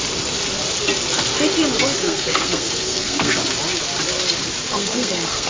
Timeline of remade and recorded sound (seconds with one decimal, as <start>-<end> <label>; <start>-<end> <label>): 0.0-2.0 recorded; 2.0-3.4 remade; 3.4-4.7 recorded; 4.7-5.5 remade